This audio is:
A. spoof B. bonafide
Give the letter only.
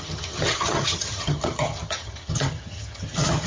A